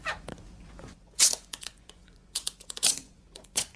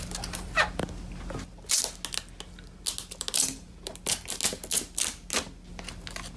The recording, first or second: second